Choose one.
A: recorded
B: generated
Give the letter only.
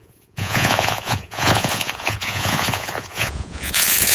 B